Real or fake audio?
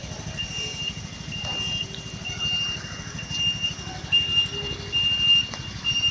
real